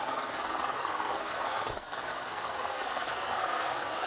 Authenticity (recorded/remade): remade